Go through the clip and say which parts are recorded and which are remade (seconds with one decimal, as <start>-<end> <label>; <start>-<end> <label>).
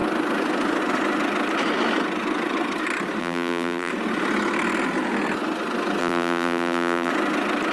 0.0-3.2 recorded; 3.2-3.9 remade; 3.9-6.0 recorded; 6.0-7.1 remade; 7.1-7.7 recorded